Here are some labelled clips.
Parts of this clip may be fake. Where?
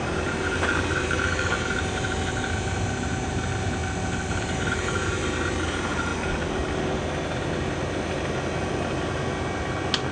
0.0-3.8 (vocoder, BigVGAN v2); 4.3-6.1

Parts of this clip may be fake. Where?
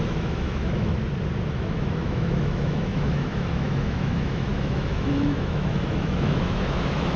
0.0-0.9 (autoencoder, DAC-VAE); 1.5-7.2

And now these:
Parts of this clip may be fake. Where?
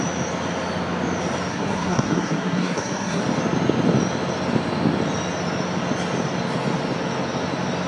1.5-3.2 (codec, SNAC)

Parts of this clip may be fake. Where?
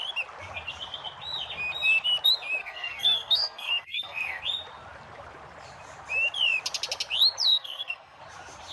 2.6-4.4 (codec, SNAC); 7.5-8.2